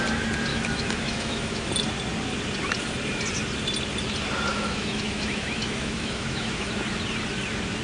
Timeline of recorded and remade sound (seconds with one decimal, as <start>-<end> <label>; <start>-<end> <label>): 0.0-0.5 recorded; 0.5-1.7 remade; 1.7-4.5 recorded; 4.5-6.7 remade; 6.7-7.8 recorded